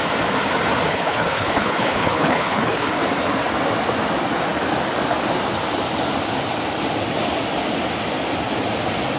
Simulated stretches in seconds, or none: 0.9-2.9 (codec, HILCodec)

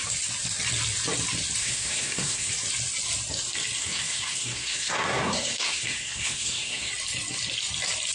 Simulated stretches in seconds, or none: 1.6-2.5 (codec, SNAC); 3.8-6.9

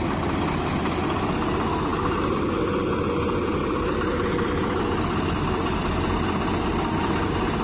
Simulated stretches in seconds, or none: 3.6-4.8 (vocoder, BigVGAN v2)

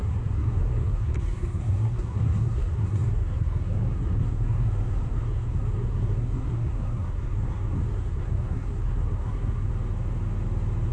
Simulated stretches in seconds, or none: 0.0-9.7 (codec, SNAC)

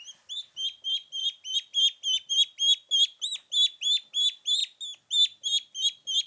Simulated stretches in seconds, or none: none